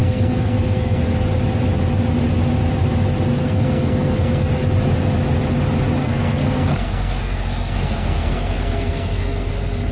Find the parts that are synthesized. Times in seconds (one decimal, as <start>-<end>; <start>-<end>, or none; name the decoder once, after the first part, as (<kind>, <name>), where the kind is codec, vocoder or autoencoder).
0.0-1.0 (codec, SNAC); 3.4-4.5; 6.0-9.5